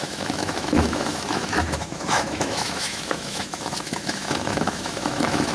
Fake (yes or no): yes